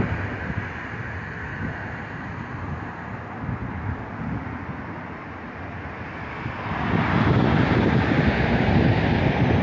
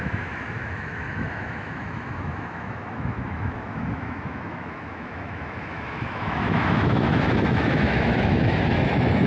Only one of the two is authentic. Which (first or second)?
first